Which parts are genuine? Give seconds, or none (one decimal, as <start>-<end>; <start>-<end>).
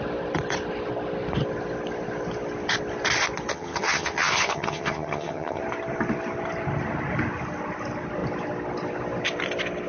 0.0-3.5; 5.6-9.9